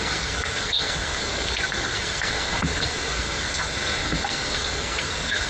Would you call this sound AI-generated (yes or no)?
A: yes